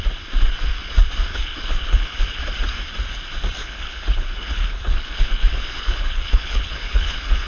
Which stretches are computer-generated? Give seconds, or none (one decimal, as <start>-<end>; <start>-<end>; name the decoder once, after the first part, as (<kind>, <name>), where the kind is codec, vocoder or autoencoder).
1.3-2.4 (codec, HILCodec); 3.6-7.5